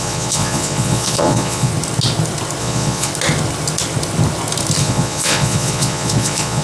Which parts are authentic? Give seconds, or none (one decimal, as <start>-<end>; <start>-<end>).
1.7-2.6; 3.1-4.8